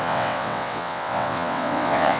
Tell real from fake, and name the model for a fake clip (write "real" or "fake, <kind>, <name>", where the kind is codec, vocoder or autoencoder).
fake, vocoder, WaveNeXt